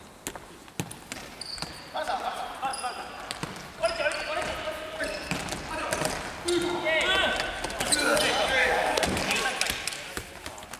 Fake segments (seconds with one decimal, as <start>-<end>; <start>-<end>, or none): 8.6-9.2